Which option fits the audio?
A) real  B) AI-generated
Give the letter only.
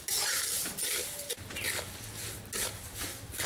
A